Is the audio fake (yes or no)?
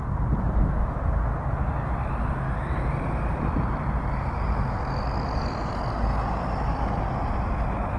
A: no